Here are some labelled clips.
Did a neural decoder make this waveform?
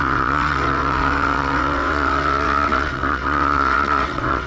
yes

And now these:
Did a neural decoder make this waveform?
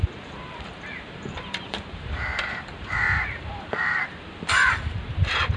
yes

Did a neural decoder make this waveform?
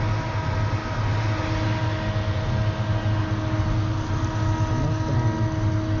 no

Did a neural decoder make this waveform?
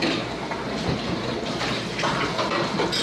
no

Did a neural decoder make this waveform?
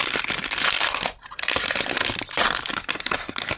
no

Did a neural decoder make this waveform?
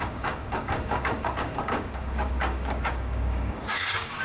yes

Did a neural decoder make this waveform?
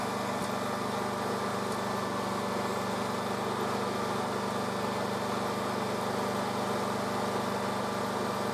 no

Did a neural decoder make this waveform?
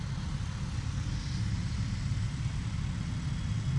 no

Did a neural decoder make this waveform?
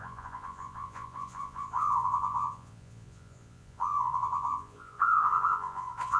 yes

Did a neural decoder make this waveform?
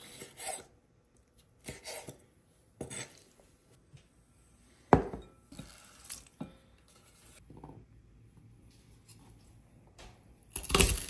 no